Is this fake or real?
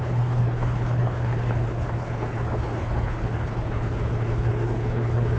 fake